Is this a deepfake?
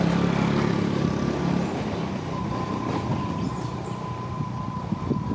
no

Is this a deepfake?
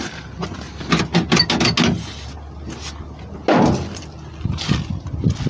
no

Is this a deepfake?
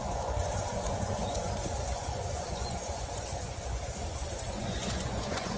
yes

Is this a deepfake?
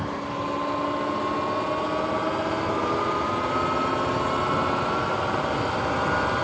no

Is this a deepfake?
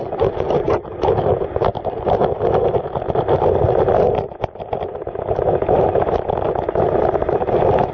no